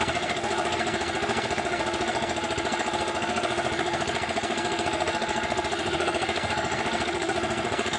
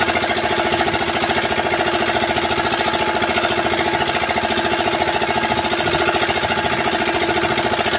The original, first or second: second